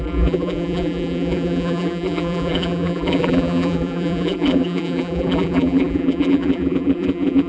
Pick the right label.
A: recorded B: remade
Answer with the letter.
B